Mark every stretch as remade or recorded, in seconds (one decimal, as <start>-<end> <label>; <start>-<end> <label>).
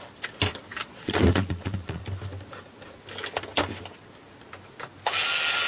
0.0-0.8 recorded; 0.8-2.0 remade; 2.0-5.7 recorded